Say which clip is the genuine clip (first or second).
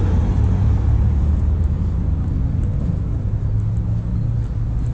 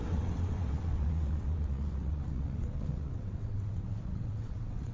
first